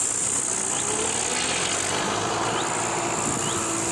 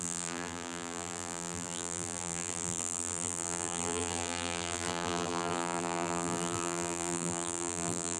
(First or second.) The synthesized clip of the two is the second